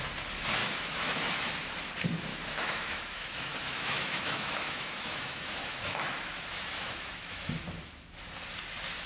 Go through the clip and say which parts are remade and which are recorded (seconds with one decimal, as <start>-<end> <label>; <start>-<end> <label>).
0.0-0.6 recorded; 0.6-1.5 remade; 1.5-2.3 recorded; 2.3-7.5 remade; 7.5-9.1 recorded